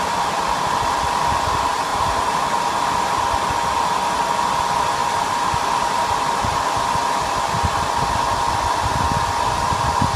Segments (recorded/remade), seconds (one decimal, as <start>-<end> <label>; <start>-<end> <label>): 0.0-1.9 recorded; 1.9-3.1 remade; 3.1-5.0 recorded; 5.0-6.5 remade; 6.5-10.2 recorded

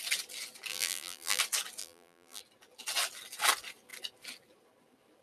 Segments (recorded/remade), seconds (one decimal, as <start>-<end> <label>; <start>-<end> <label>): 0.0-0.7 recorded; 0.7-1.4 remade; 1.4-1.8 recorded; 1.8-2.4 remade; 2.4-5.2 recorded

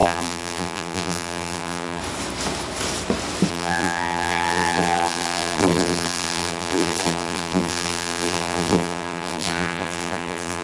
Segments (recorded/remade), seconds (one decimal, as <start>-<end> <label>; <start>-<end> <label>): 0.0-2.0 remade; 2.0-3.5 recorded; 3.5-10.6 remade

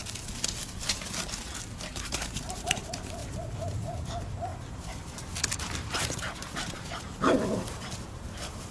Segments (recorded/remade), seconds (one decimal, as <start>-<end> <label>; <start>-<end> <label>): 0.0-0.8 recorded; 0.8-3.2 remade; 3.2-4.0 recorded; 4.0-8.7 remade

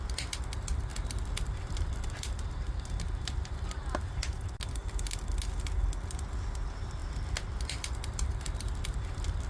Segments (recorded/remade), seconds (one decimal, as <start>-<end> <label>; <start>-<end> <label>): 0.0-0.9 recorded; 0.9-2.9 remade; 2.9-7.0 recorded; 7.0-8.8 remade; 8.8-9.5 recorded

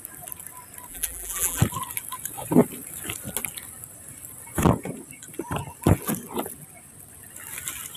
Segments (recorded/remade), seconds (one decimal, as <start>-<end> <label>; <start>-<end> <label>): 0.0-0.9 recorded; 0.9-1.6 remade; 1.6-8.0 recorded

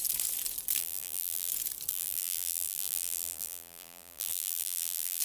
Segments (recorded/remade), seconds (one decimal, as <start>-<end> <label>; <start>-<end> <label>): 0.0-0.8 recorded; 0.8-1.5 remade; 1.5-1.9 recorded; 1.9-5.2 remade

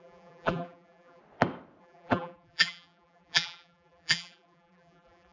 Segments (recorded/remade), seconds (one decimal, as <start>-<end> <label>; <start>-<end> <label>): 0.0-1.2 remade; 1.2-1.8 recorded; 1.8-5.3 remade